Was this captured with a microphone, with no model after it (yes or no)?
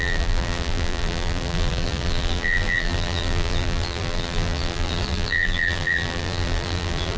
no